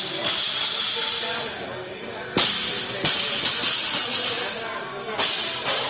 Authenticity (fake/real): real